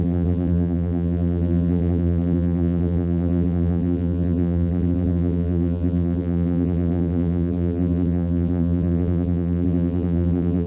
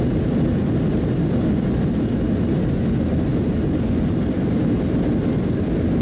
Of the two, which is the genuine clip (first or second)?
second